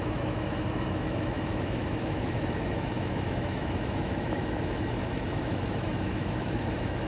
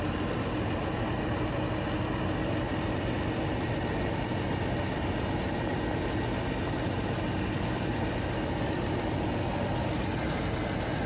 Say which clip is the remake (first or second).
first